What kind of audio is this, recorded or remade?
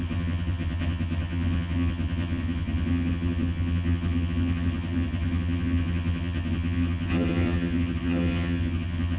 remade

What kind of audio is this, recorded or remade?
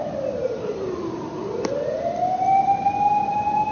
recorded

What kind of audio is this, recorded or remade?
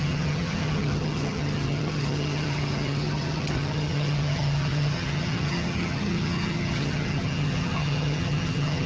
remade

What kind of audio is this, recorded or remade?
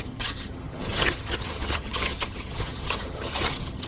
remade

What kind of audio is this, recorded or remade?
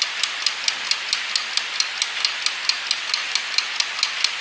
recorded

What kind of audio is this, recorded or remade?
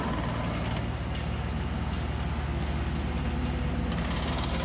recorded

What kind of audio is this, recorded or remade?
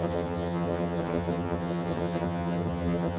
remade